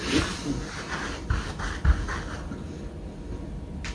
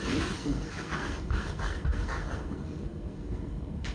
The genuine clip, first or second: first